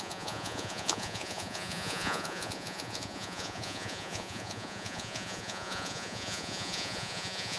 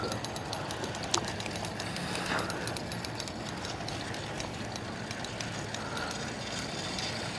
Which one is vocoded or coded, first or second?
first